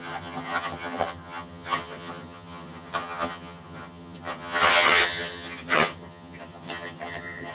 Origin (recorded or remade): remade